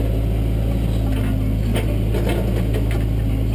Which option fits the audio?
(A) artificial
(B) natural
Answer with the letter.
B